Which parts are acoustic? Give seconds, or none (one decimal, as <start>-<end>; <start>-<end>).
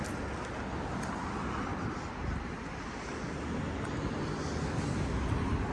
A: 0.0-1.7; 2.8-5.7